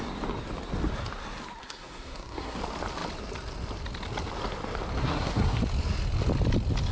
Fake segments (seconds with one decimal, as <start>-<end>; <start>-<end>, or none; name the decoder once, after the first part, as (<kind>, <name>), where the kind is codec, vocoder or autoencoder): 1.6-2.6 (codec, SNAC); 5.0-5.6